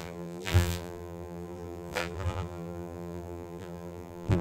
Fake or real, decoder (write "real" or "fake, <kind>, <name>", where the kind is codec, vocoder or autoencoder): fake, vocoder, BigVGAN v2